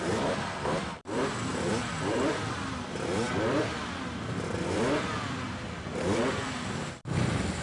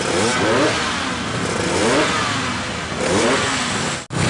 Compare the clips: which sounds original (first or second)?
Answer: second